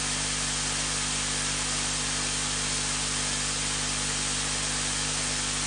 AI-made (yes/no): no